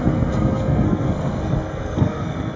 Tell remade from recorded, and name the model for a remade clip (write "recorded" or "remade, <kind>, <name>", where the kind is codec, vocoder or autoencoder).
remade, codec, SNAC